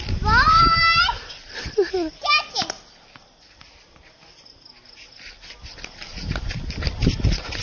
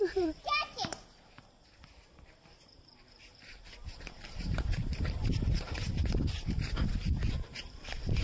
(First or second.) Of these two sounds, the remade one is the second